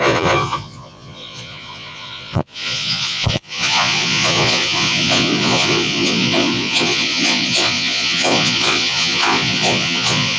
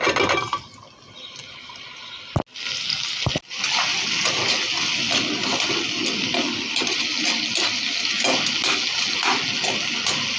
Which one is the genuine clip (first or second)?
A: second